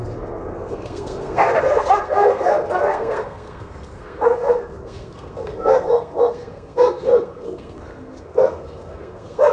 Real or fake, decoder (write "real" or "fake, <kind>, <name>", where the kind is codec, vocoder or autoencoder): fake, codec, SNAC